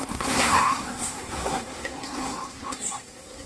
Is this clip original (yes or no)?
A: no